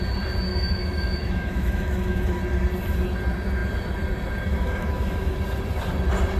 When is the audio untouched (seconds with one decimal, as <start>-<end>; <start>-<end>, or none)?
0.0-0.5; 2.4-4.5; 5.4-6.4